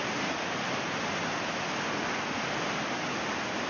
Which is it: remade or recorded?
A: recorded